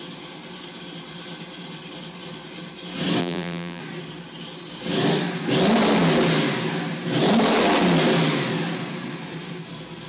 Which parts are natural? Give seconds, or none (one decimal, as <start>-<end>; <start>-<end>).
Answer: 0.0-3.2; 3.8-10.1